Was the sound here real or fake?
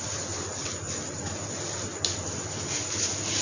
real